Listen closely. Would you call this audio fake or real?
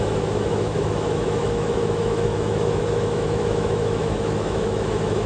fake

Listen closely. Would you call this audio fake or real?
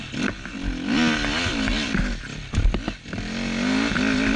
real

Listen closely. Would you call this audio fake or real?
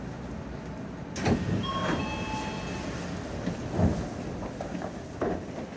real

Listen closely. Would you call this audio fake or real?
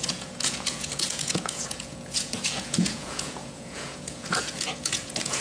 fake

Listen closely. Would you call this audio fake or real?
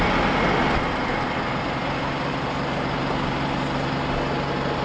real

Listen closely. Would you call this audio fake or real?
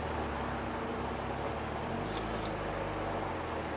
real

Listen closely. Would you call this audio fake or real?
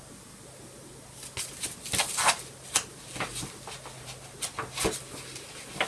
real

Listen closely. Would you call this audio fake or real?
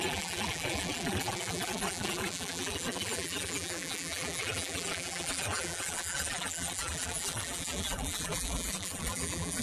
fake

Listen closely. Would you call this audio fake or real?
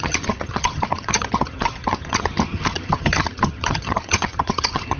fake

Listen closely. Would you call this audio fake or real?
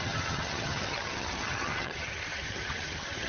fake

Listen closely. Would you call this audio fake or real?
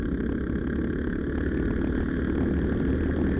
real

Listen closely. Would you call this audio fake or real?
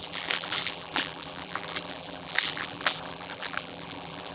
fake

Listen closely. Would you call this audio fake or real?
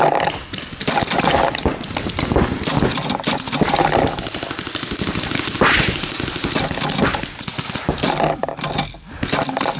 real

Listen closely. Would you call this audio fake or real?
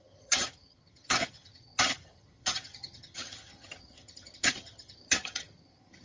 fake